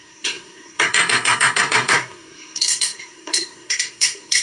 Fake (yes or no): yes